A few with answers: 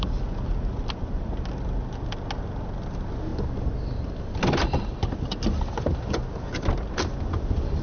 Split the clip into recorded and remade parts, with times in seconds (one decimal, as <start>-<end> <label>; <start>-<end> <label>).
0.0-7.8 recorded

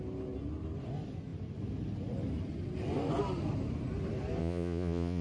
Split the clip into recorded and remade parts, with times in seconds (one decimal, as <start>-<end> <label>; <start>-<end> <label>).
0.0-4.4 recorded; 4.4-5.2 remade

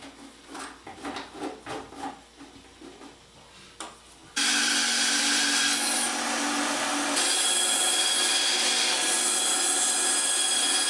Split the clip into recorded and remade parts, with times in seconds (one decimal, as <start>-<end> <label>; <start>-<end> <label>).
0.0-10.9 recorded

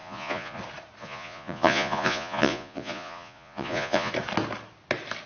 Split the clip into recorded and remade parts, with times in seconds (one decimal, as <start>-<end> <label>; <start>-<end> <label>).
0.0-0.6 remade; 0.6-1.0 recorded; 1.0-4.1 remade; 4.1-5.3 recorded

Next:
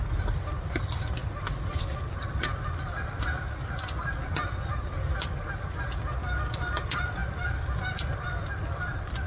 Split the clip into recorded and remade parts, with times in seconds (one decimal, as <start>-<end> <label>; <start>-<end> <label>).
0.0-9.3 recorded

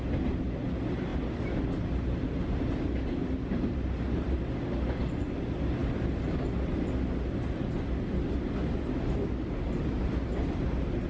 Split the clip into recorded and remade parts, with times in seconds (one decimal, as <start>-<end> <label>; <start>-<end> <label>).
0.0-11.1 recorded

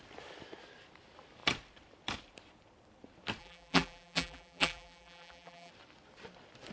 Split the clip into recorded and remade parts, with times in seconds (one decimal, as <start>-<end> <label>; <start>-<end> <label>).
0.0-3.4 recorded; 3.4-5.7 remade; 5.7-6.7 recorded

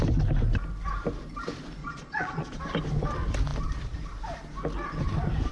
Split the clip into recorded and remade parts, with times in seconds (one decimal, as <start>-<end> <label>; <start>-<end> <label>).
0.0-1.8 recorded; 1.8-2.6 remade; 2.6-5.5 recorded